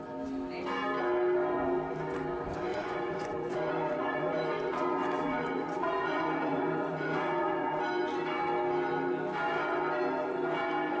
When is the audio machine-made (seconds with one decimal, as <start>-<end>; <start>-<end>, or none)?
2.7-7.8